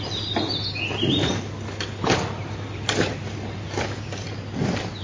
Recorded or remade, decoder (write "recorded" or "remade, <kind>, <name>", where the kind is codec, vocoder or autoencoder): recorded